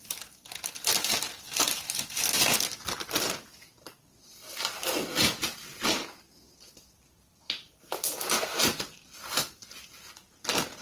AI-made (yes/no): no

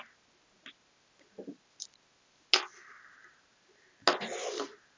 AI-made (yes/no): no